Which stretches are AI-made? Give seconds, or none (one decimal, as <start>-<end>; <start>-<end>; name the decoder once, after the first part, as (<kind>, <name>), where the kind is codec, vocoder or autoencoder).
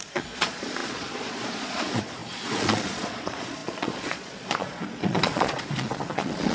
0.0-6.5 (vocoder, Vocos)